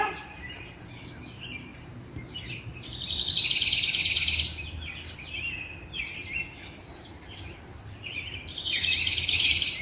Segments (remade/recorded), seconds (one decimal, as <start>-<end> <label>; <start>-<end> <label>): 0.0-1.7 remade; 1.7-6.8 recorded; 6.8-9.8 remade